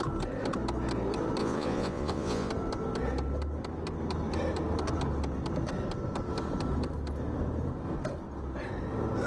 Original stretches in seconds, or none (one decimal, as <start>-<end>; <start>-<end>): 0.0-1.4; 2.5-9.3

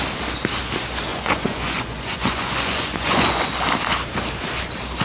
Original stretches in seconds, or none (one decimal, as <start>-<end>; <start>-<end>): 0.0-1.1; 3.5-5.0